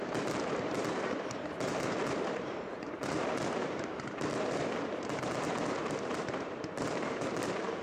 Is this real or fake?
fake